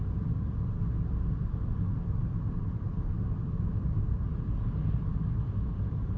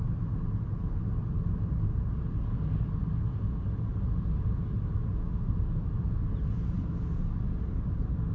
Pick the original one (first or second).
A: second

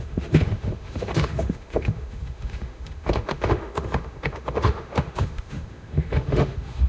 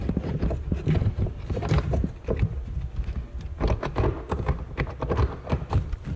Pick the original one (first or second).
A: second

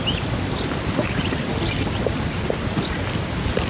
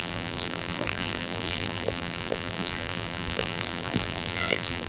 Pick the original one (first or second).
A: first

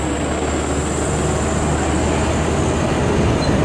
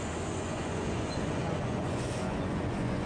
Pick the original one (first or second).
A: first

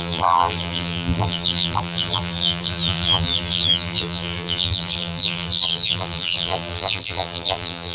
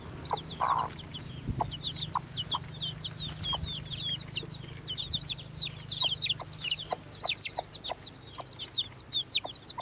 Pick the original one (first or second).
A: second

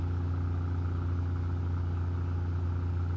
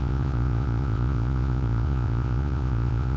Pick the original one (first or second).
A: first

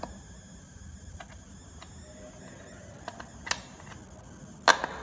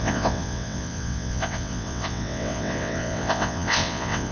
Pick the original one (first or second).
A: first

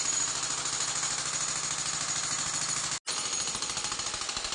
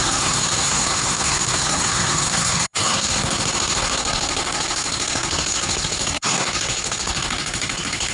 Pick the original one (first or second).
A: first